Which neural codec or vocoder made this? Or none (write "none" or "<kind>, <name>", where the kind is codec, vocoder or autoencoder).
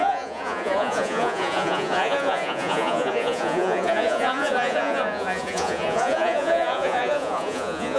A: vocoder, Vocos